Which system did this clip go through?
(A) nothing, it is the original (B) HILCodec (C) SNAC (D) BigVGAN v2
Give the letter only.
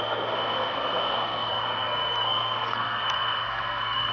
C